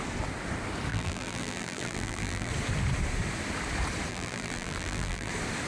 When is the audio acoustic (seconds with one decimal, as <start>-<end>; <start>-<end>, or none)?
0.0-0.9; 2.5-4.1; 5.3-5.7